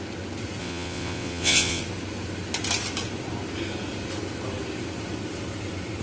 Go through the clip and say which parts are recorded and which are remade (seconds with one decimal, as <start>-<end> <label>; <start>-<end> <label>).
0.0-0.6 recorded; 0.6-1.8 remade; 1.8-6.0 recorded